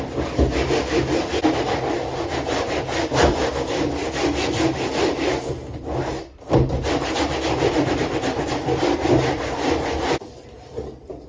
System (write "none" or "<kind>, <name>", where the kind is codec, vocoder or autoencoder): none